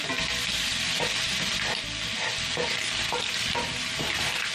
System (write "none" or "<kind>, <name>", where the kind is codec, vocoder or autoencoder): none